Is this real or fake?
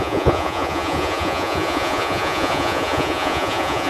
fake